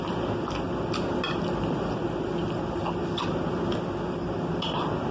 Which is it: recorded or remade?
recorded